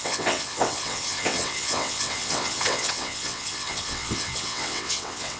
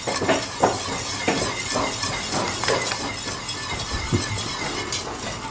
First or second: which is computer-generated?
first